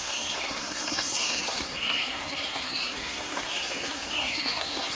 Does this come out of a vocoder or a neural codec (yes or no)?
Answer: yes